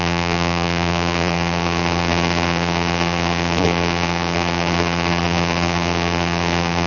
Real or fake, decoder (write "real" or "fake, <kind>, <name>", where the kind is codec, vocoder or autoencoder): fake, vocoder, BigVGAN v2